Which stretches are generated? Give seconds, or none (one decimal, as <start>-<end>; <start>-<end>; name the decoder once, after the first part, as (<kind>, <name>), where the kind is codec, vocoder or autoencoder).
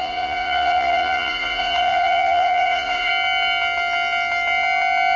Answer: 0.0-3.1 (vocoder, Vocos)